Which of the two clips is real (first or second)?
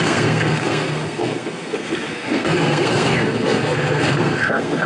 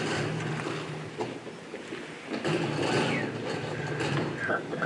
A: second